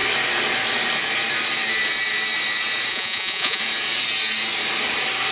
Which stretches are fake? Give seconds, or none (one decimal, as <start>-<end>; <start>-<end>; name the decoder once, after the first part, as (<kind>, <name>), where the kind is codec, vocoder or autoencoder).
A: 2.9-3.6 (vocoder, Vocos)

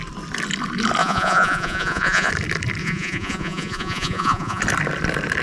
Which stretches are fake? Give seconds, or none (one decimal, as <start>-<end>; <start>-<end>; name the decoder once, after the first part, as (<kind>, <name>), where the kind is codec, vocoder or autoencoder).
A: 1.0-2.3 (vocoder, Vocos); 2.8-4.6

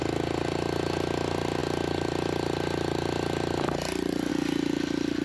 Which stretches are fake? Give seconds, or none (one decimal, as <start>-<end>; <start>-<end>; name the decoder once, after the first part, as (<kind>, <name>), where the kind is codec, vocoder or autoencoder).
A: none

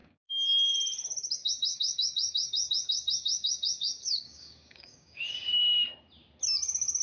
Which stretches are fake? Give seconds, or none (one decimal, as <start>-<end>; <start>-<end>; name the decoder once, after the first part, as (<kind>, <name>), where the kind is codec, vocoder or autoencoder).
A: 0.0-0.7 (codec, DAC); 1.4-5.6

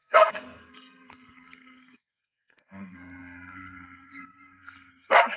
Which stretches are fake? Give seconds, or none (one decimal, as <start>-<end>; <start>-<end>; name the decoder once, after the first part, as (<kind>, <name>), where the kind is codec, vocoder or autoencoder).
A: 0.0-5.4 (codec, SNAC)